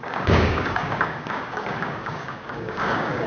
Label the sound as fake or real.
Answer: fake